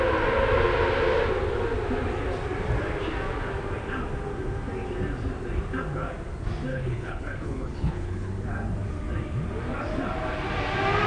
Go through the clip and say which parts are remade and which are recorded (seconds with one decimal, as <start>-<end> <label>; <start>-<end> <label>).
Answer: 0.0-6.7 recorded; 6.7-8.3 remade; 8.3-11.1 recorded